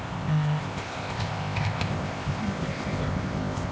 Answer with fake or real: fake